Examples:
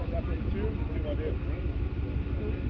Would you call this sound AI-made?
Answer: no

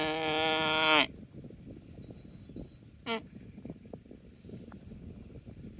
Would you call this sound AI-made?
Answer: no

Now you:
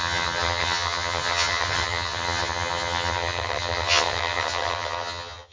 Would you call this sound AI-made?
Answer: yes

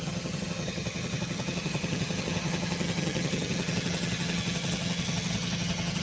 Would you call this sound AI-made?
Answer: yes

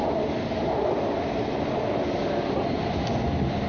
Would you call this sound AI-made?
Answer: no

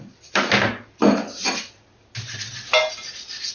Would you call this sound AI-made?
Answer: no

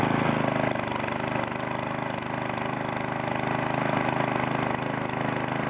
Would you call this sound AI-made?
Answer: no